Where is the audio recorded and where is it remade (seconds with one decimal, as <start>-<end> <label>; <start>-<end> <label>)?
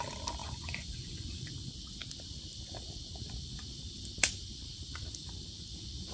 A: 0.0-0.4 recorded; 0.4-1.5 remade; 1.5-6.1 recorded